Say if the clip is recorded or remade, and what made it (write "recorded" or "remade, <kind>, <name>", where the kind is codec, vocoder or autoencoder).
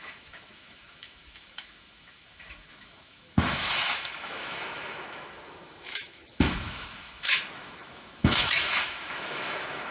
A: remade, autoencoder, DAC-VAE